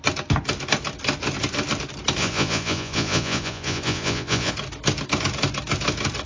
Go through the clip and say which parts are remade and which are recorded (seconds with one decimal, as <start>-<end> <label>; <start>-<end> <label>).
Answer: 0.0-2.2 recorded; 2.2-4.5 remade; 4.5-6.3 recorded